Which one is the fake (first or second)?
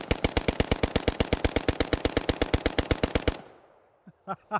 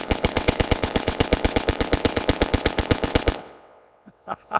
second